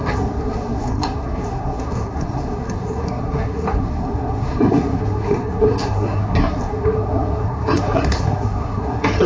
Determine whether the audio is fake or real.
fake